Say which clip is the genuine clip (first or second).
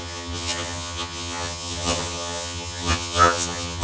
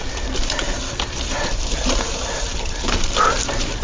second